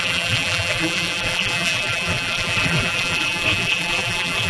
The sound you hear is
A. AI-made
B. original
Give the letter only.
A